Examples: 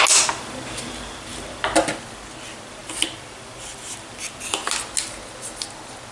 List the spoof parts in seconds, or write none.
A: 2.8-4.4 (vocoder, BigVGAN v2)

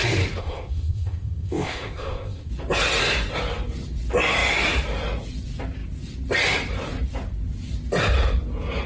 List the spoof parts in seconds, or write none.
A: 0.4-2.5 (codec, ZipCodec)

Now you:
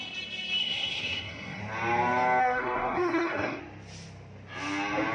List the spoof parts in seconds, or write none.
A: 0.6-1.6 (codec, SNAC); 2.4-3.6